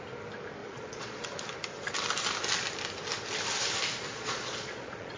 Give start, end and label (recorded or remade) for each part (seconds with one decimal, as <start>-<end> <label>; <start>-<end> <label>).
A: 0.0-0.6 recorded; 0.6-1.2 remade; 1.2-4.1 recorded; 4.1-5.2 remade